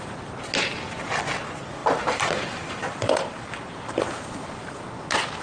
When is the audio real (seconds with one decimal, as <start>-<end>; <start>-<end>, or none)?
0.0-1.8; 4.0-5.4